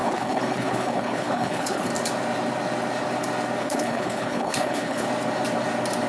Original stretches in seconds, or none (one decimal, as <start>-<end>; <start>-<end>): 1.9-3.6; 5.1-6.1